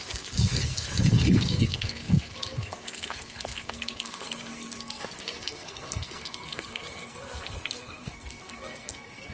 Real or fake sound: fake